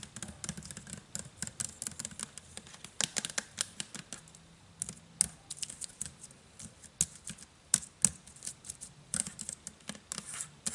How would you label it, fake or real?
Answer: real